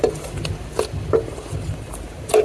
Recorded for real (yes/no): yes